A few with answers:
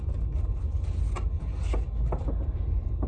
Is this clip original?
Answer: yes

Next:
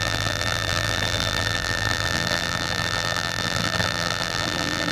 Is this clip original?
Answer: no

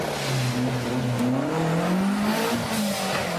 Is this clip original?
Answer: yes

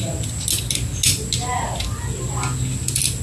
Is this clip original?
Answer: yes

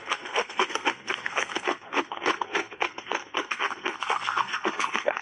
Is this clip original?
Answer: no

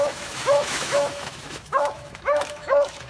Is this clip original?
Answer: no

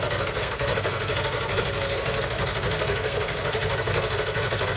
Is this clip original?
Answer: no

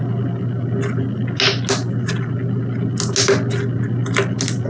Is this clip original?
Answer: yes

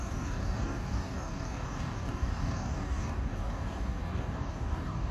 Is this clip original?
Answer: no